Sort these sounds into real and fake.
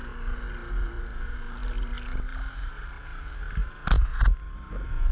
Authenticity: real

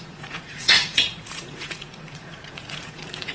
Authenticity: fake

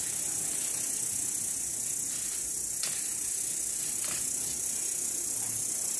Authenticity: real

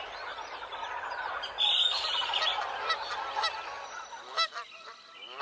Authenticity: real